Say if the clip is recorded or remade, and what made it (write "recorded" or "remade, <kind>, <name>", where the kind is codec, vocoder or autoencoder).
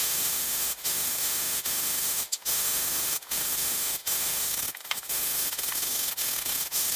remade, autoencoder, DAC-VAE